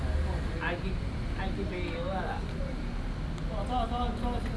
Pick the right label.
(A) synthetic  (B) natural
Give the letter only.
B